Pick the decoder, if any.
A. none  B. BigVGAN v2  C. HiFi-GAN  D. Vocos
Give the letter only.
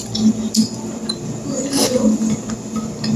A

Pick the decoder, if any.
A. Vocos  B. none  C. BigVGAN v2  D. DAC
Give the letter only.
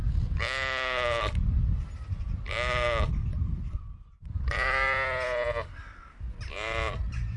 B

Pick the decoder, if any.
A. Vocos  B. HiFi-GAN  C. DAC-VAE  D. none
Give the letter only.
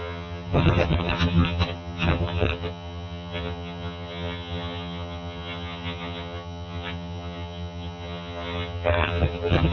B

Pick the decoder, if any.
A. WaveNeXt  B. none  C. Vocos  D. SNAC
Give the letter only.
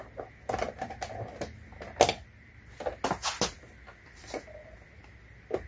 B